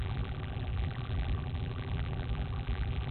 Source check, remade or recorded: remade